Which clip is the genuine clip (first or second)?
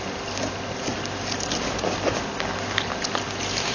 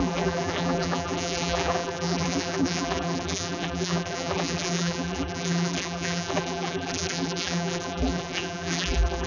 first